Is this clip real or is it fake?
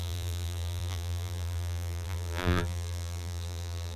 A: fake